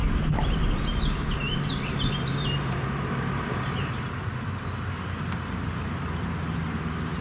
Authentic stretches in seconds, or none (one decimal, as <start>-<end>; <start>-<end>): 4.3-7.2